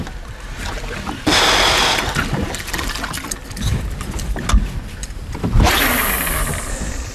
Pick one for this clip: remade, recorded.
recorded